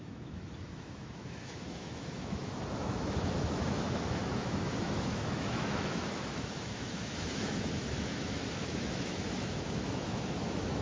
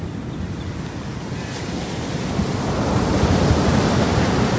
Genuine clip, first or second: second